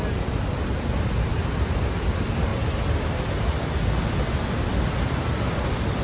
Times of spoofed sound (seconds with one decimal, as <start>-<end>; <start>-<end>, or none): none

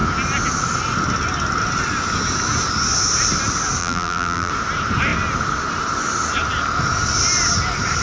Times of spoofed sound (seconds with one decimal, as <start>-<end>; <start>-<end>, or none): 3.8-4.5

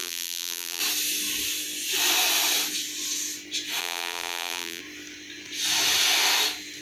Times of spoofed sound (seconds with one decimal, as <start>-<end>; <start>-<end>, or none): 0.0-0.8; 3.8-4.8

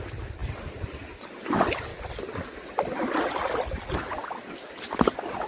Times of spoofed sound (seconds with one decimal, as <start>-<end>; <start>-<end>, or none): none